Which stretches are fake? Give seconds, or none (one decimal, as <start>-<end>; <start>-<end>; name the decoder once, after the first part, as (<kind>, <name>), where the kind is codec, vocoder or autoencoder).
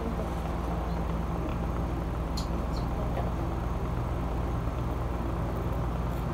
none